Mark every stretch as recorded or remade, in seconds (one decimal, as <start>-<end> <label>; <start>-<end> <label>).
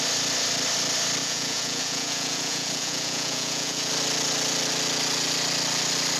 0.0-1.2 recorded; 1.2-3.9 remade; 3.9-6.2 recorded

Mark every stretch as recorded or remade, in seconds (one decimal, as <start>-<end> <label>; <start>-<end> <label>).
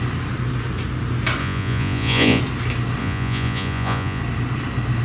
0.0-1.4 recorded; 1.4-2.4 remade; 2.4-3.0 recorded; 3.0-4.2 remade; 4.2-5.0 recorded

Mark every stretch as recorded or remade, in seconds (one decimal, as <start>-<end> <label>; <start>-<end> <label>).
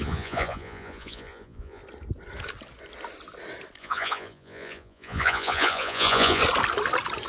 0.0-1.8 remade; 1.8-3.8 recorded; 3.8-6.4 remade; 6.4-7.3 recorded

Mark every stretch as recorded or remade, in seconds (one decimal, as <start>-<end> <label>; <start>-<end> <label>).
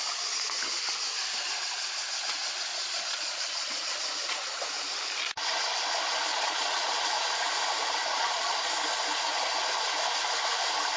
0.0-2.7 recorded; 2.7-4.4 remade; 4.4-6.3 recorded; 6.3-7.0 remade; 7.0-8.1 recorded; 8.1-8.7 remade; 8.7-11.0 recorded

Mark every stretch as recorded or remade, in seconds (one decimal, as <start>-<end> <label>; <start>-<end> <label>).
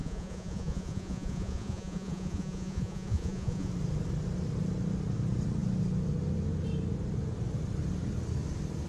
0.0-3.7 remade; 3.7-8.9 recorded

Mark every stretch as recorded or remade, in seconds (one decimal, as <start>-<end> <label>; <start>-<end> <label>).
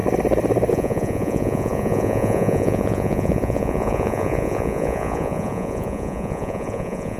0.0-0.7 recorded; 0.7-7.2 remade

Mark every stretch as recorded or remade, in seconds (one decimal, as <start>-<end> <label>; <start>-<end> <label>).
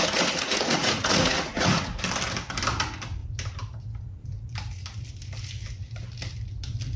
0.0-2.0 remade; 2.0-7.0 recorded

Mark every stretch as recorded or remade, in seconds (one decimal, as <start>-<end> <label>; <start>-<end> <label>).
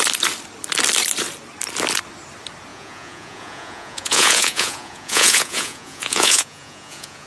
0.0-2.7 recorded; 2.7-7.3 remade